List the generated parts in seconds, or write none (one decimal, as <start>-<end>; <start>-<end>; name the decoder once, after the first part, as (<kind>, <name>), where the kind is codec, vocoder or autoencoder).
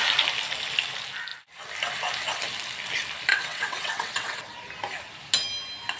3.3-4.4 (vocoder, WaveNeXt)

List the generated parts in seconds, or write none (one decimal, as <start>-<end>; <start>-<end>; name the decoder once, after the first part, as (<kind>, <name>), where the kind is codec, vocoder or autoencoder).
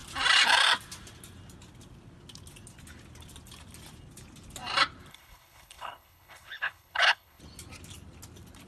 5.1-7.4 (codec, HILCodec)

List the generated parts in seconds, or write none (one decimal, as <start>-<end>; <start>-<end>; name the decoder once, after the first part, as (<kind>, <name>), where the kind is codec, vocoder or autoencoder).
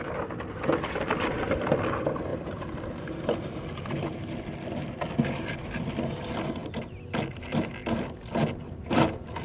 none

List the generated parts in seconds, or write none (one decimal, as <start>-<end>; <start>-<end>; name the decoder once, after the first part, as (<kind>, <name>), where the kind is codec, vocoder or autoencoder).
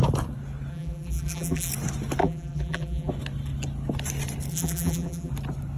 0.7-1.7 (vocoder, BigVGAN v2); 2.2-3.1; 4.5-5.3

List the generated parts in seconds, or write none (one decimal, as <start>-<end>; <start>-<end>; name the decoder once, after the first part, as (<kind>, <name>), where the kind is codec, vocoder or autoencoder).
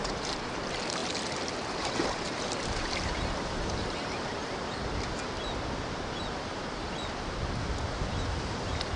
0.6-4.4 (vocoder, BigVGAN v2); 8.3-9.0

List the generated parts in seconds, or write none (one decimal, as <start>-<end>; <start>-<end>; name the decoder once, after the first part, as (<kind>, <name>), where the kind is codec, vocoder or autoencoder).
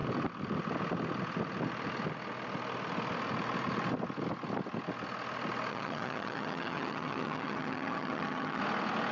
5.7-8.6 (vocoder, HiFi-GAN)